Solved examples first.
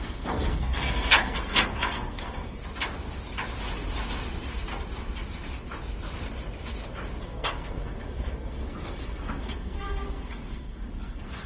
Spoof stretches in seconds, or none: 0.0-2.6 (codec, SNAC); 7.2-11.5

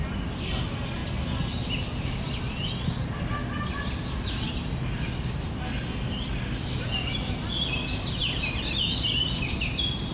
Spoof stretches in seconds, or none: none